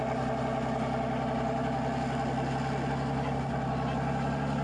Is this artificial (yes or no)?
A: no